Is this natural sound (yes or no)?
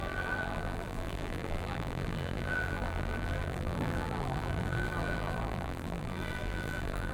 no